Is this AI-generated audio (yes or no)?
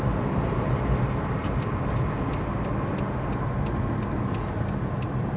no